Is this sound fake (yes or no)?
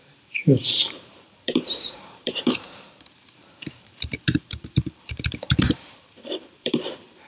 yes